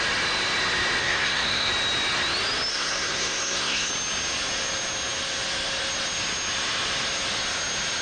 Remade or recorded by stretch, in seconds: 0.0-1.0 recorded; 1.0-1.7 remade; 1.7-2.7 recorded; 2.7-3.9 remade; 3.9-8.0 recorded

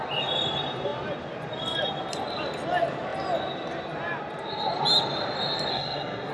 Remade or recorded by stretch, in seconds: 0.0-5.7 recorded; 5.7-6.3 remade

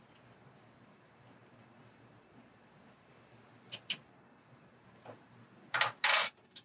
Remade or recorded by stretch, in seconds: 0.0-6.6 recorded

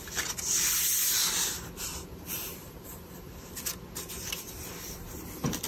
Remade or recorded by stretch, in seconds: 0.0-1.9 recorded; 1.9-3.5 remade; 3.5-5.7 recorded

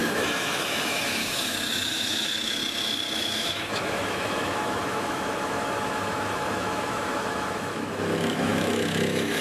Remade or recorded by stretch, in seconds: 0.0-2.6 remade; 2.6-3.2 recorded; 3.2-9.4 remade